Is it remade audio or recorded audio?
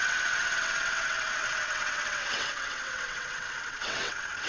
remade